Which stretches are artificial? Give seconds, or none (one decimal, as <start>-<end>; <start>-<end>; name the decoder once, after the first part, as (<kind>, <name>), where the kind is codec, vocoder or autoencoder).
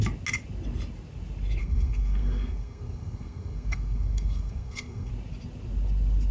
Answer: 1.6-5.1 (codec, SNAC)